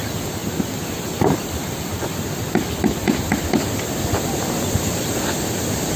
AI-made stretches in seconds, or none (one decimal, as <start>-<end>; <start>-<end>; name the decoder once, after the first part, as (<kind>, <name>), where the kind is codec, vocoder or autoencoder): 0.0-0.4 (vocoder, BigVGAN v2); 0.9-1.9; 4.7-6.0